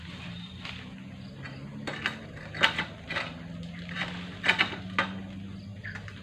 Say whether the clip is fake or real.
real